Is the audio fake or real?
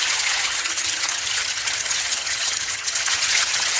fake